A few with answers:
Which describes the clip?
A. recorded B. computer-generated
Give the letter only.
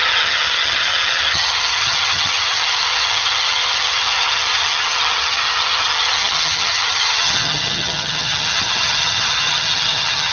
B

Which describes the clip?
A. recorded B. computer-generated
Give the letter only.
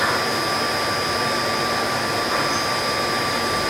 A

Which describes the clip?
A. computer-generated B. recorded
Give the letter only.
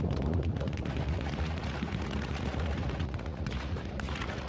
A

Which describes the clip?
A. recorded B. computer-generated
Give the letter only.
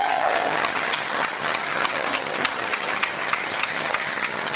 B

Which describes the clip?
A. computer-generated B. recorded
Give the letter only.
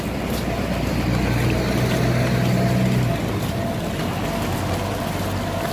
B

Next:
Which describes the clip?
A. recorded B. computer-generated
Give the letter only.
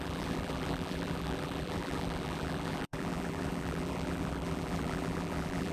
B